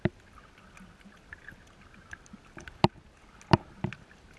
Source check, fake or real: real